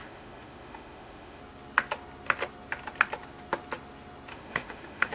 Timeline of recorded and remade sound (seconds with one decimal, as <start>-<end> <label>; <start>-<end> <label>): 0.0-1.4 remade; 1.4-4.3 recorded; 4.3-5.1 remade